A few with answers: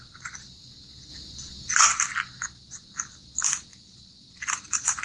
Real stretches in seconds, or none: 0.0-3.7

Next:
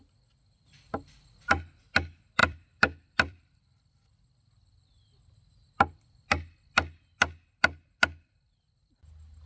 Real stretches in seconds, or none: 0.0-2.4; 5.7-9.5

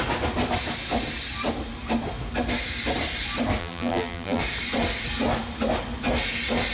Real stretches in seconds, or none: 0.0-3.6; 4.4-6.7

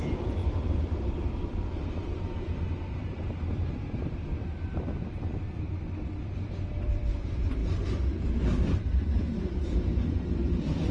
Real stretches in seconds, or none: 7.6-8.8